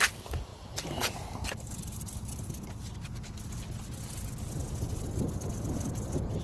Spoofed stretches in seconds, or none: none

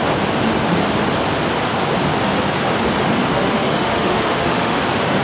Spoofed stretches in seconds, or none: 3.3-4.8 (autoencoder, DAC-VAE)

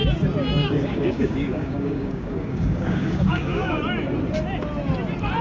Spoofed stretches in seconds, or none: 0.6-3.8 (codec, DAC)

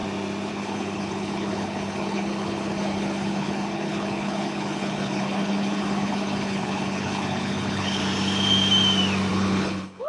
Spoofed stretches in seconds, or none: 0.5-8.0 (codec, HILCodec); 9.3-10.1

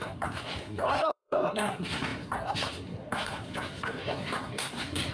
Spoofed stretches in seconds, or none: 0.0-5.1 (codec, SNAC)

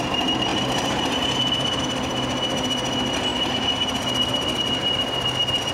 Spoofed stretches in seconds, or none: 0.5-1.8 (vocoder, BigVGAN v2); 3.3-4.6

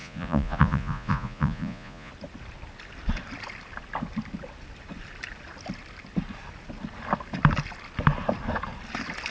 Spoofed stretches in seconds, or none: 0.0-2.1 (vocoder, Vocos)

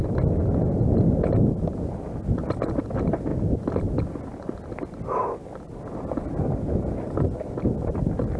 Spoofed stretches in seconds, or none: none